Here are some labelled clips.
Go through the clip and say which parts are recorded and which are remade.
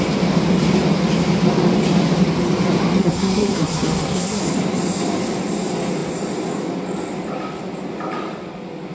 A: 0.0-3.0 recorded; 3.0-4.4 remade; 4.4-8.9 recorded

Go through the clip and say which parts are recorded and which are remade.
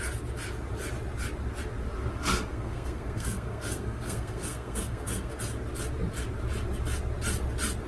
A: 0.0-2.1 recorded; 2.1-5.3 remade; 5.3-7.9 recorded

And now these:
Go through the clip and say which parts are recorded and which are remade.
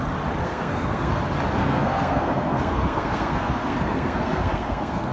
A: 0.0-0.4 recorded; 0.4-1.2 remade; 1.2-1.6 recorded; 1.6-5.1 remade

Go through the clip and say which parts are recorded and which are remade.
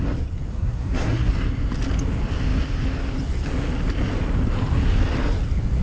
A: 0.0-0.5 recorded; 0.5-1.3 remade; 1.3-5.8 recorded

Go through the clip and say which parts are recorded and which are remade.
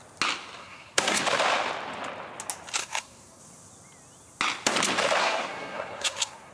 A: 0.0-0.6 recorded; 0.6-1.2 remade; 1.2-2.8 recorded; 2.8-3.4 remade; 3.4-5.2 recorded; 5.2-6.5 remade